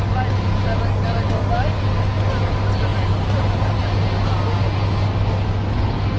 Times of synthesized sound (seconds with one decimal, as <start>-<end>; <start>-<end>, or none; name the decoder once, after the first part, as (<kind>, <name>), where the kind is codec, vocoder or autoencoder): 2.9-3.8 (vocoder, BigVGAN v2)